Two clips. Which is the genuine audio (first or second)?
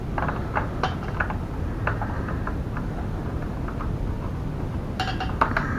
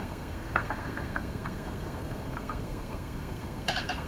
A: first